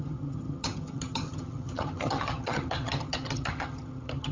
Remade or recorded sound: remade